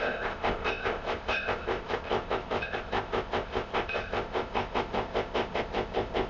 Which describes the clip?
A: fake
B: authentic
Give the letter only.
A